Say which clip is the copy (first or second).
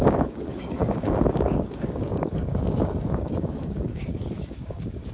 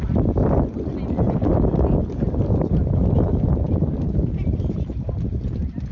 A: first